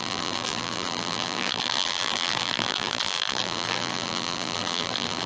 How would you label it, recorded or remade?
remade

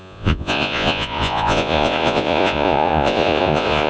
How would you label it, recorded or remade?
remade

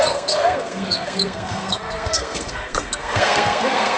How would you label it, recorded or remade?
remade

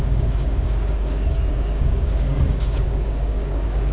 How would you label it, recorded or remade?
remade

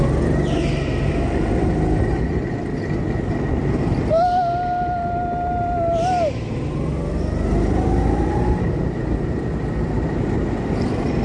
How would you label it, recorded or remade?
recorded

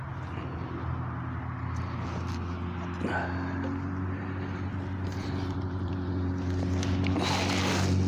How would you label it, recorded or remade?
recorded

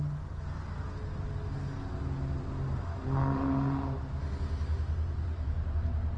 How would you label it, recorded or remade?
recorded